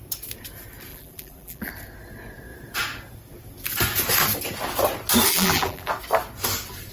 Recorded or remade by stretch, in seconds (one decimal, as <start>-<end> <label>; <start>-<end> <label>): 0.0-0.9 recorded; 0.9-1.7 remade; 1.7-5.3 recorded; 5.3-5.9 remade; 5.9-6.9 recorded